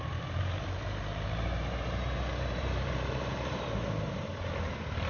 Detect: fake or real fake